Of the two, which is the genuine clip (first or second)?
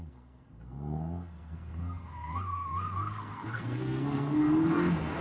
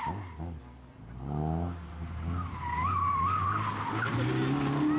second